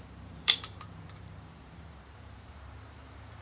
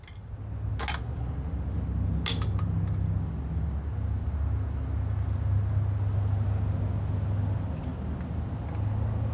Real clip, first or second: second